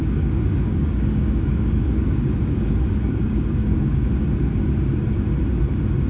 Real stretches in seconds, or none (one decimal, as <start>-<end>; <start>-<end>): 4.1-6.1